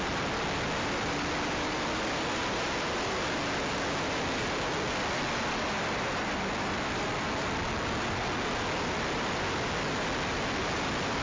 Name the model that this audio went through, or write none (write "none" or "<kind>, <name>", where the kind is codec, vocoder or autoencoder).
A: none